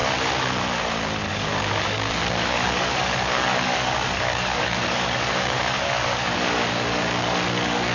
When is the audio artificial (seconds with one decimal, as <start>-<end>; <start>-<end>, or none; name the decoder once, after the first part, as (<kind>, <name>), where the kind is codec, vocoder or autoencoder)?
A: 1.3-7.9 (codec, DAC)